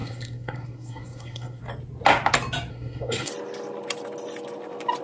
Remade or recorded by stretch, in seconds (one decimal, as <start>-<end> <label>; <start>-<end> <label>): 0.0-1.6 remade; 1.6-2.7 recorded; 2.7-3.3 remade; 3.3-5.0 recorded